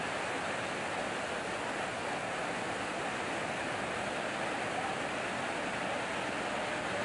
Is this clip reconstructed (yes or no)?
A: no